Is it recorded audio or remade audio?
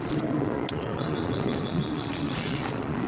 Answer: remade